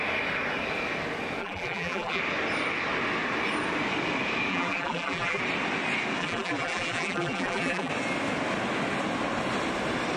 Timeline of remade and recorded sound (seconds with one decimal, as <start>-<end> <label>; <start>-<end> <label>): 0.0-1.4 recorded; 1.4-2.2 remade; 2.2-4.5 recorded; 4.5-5.4 remade; 5.4-6.2 recorded; 6.2-7.9 remade; 7.9-10.2 recorded

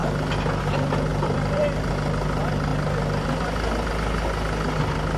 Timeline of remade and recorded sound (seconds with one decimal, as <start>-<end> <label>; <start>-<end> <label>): 0.0-0.6 remade; 0.6-1.1 recorded; 1.1-1.9 remade; 1.9-5.2 recorded

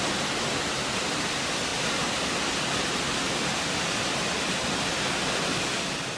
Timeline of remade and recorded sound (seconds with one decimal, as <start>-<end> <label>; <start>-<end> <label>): 0.0-1.7 recorded; 1.7-4.9 remade; 4.9-6.2 recorded

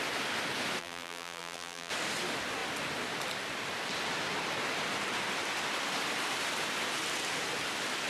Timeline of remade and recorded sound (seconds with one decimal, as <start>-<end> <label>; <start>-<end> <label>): 0.0-0.8 recorded; 0.8-1.9 remade; 1.9-8.1 recorded

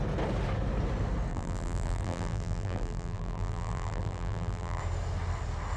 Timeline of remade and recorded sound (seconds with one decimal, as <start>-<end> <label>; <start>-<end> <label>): 0.0-1.3 recorded; 1.3-4.8 remade; 4.8-5.8 recorded